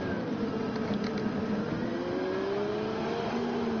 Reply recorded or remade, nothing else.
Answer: recorded